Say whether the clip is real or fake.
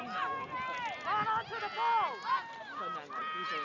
real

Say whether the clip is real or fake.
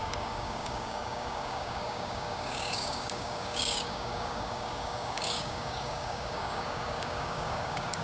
fake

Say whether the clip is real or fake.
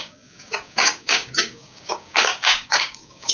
fake